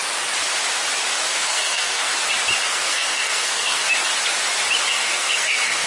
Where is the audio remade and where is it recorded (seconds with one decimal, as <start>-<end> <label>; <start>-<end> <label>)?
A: 0.0-1.3 recorded; 1.3-2.1 remade; 2.1-2.6 recorded; 2.6-3.8 remade; 3.8-4.9 recorded; 4.9-5.9 remade